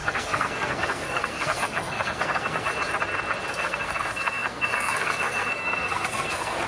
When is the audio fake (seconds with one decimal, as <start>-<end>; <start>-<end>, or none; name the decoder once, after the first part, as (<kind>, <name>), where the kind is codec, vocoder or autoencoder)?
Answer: 0.0-2.7 (codec, SNAC); 3.5-6.7